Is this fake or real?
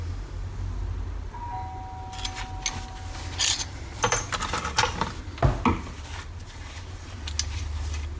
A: real